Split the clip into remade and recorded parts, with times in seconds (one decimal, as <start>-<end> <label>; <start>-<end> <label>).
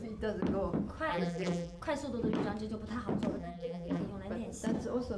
0.0-1.1 recorded; 1.1-1.8 remade; 1.8-3.4 recorded; 3.4-4.0 remade; 4.0-5.2 recorded